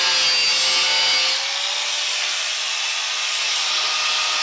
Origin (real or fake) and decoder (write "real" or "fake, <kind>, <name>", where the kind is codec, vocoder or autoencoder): real